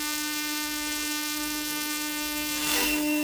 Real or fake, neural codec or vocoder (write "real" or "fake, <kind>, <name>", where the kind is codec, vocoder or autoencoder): fake, codec, SNAC